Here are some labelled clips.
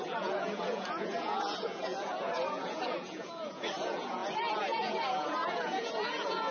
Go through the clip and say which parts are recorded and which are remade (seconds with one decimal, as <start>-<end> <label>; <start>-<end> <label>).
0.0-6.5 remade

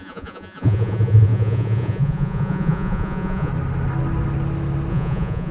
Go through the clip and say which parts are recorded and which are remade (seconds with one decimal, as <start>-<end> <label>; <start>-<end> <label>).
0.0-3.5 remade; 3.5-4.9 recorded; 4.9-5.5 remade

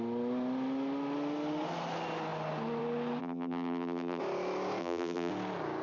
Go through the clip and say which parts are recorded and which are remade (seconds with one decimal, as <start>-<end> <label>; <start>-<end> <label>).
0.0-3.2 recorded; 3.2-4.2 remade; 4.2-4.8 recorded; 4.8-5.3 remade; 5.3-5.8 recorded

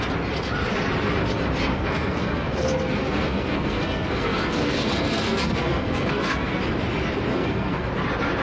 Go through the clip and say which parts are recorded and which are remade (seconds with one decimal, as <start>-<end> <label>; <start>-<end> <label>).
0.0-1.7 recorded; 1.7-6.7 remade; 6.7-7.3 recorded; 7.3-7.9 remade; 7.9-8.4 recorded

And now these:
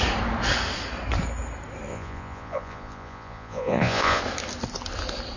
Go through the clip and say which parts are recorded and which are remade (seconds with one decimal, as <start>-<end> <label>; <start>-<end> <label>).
0.0-1.9 recorded; 1.9-4.2 remade; 4.2-5.4 recorded

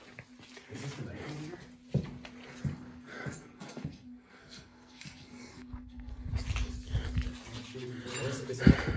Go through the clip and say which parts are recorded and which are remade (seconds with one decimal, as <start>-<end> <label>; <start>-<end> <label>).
0.0-2.7 recorded; 2.7-6.3 remade; 6.3-9.0 recorded